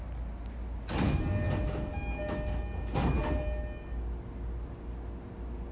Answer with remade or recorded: recorded